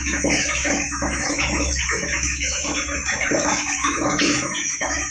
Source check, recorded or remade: remade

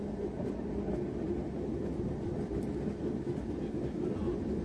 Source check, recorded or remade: recorded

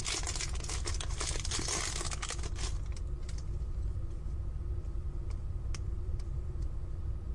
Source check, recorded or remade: recorded